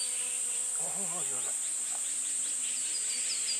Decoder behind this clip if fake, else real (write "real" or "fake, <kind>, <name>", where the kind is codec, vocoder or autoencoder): real